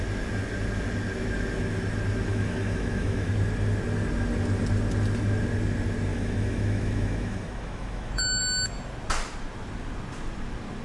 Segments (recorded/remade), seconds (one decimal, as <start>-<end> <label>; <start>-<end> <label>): 0.0-2.3 recorded; 2.3-3.3 remade; 3.3-6.1 recorded; 6.1-8.4 remade; 8.4-10.8 recorded